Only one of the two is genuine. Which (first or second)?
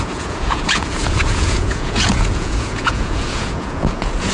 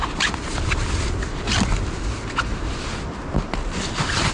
second